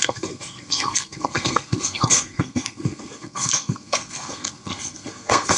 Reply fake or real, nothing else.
fake